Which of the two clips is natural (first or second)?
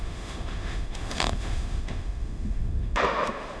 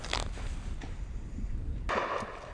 second